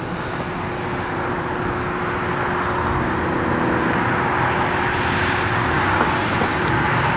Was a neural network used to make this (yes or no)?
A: no